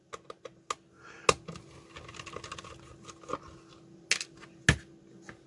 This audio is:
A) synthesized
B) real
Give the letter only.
B